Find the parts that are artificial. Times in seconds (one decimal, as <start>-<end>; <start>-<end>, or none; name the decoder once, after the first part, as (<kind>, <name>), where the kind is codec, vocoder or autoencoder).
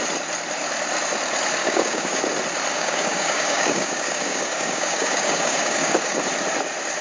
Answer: 1.6-2.2 (codec, DAC); 2.7-6.2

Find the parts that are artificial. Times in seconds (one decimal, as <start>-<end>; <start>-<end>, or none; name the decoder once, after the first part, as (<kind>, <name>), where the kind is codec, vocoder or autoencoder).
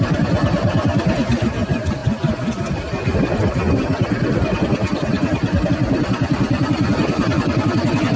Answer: 0.0-8.2 (vocoder, BigVGAN v2)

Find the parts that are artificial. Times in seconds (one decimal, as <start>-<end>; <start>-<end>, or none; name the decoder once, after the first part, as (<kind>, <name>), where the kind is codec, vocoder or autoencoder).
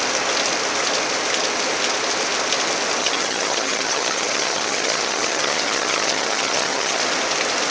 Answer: 3.0-7.0 (vocoder, HiFi-GAN)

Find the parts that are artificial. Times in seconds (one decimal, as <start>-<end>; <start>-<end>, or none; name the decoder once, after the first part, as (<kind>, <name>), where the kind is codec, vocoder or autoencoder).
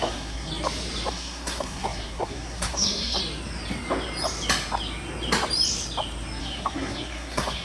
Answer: 0.0-0.5 (codec, SNAC); 1.1-3.2; 6.4-7.6